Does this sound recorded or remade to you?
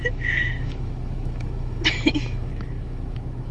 remade